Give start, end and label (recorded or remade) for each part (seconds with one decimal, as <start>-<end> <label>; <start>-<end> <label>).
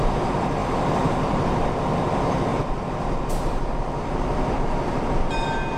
0.0-0.6 recorded; 0.6-1.6 remade; 1.6-5.8 recorded